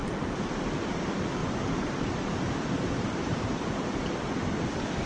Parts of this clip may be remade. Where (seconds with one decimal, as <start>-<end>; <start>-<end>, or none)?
1.4-3.8